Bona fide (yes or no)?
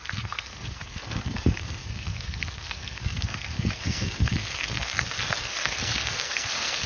no